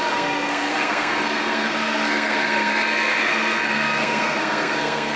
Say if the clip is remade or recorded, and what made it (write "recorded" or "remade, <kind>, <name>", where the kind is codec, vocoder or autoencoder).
remade, codec, SNAC